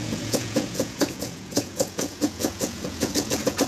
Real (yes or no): no